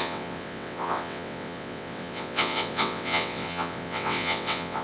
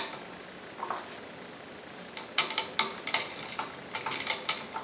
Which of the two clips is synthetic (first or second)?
first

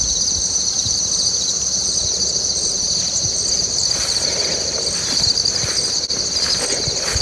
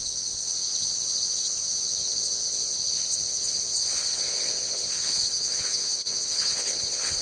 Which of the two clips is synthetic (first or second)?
second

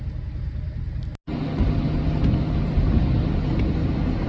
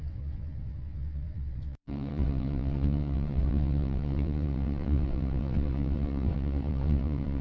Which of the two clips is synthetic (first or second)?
second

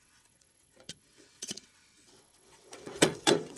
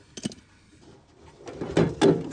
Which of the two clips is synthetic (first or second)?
first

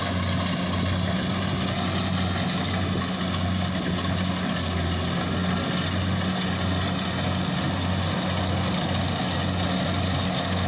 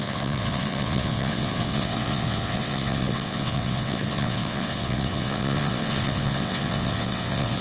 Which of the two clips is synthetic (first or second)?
second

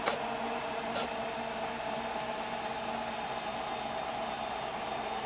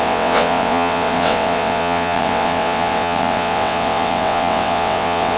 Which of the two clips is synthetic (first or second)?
second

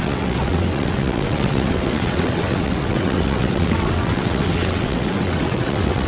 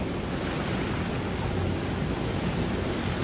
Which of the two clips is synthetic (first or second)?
first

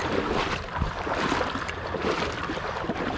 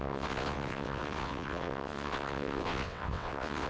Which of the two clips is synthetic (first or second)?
second